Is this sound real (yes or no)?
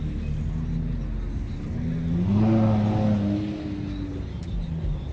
yes